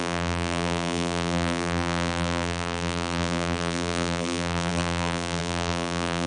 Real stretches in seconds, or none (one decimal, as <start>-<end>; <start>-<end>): none